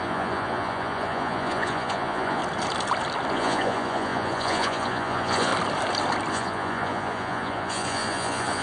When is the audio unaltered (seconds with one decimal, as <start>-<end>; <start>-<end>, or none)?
2.4-3.3; 5.5-6.3